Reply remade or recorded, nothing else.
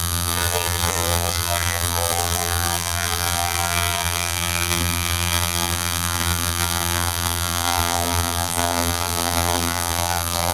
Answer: remade